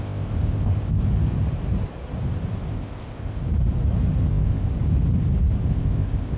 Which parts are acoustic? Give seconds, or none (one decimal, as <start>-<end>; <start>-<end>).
1.0-2.7; 3.4-4.3; 4.7-5.7

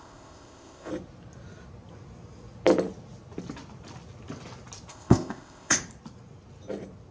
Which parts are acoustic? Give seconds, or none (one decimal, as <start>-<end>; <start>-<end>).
0.9-4.9; 5.8-7.1